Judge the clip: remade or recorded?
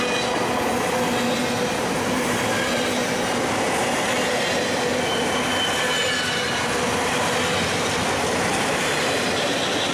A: recorded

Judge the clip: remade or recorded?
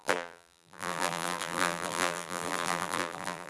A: remade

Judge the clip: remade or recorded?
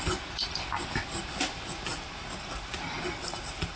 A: recorded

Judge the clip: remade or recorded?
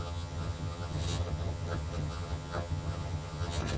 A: remade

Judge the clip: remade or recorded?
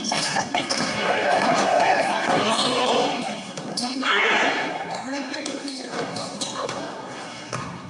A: remade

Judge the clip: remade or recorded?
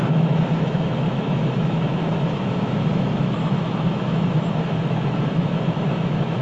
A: remade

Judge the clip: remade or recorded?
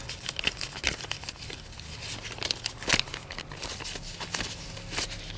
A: recorded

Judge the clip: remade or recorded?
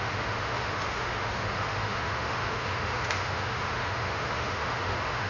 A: remade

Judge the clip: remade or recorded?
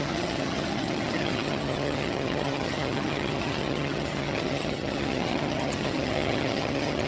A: remade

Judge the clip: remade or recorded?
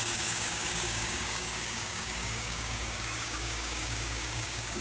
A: remade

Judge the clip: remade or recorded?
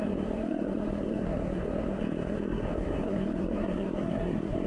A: remade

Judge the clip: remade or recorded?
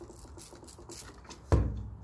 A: recorded